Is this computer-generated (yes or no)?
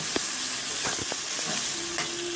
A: no